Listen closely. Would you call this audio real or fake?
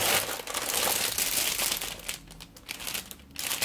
real